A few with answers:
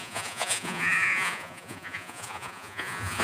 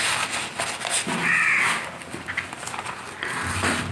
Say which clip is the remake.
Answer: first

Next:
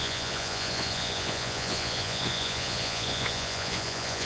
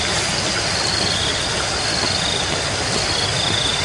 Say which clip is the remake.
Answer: first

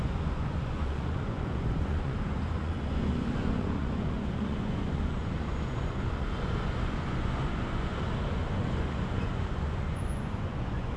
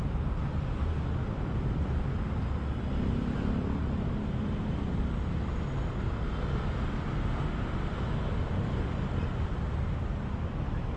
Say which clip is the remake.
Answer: first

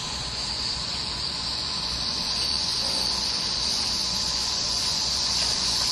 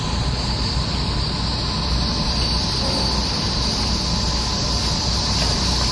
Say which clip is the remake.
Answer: first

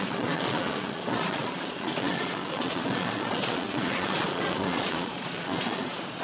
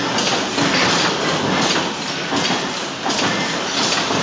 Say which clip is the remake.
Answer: first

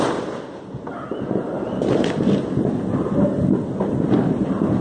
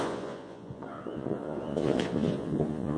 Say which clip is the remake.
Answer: second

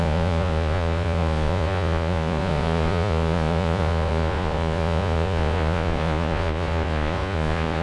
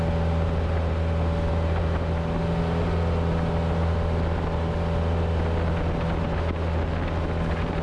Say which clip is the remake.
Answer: first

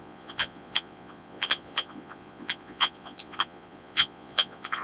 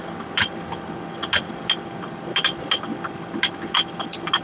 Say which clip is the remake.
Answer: first